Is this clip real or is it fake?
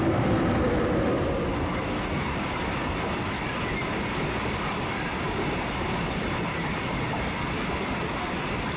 real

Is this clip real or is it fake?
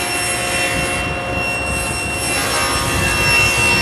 real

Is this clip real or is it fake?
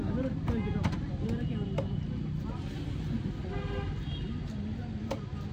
real